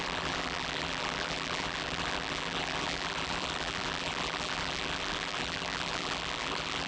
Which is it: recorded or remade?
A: remade